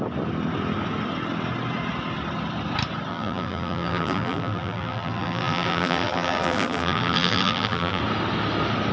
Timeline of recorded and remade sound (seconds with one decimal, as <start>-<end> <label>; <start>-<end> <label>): 0.0-3.1 recorded; 3.1-8.0 remade; 8.0-8.9 recorded